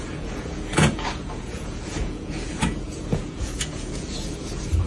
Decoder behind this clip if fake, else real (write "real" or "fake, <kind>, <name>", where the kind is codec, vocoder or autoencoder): fake, vocoder, Vocos